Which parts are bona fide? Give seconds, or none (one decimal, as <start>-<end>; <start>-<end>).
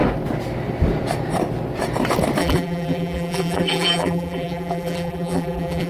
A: 0.0-2.4